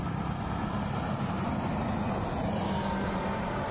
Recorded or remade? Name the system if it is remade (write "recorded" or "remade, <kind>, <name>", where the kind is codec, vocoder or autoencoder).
recorded